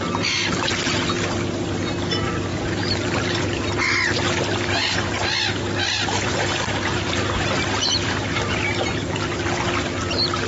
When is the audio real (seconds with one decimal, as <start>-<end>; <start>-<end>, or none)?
0.0-2.5; 3.6-10.5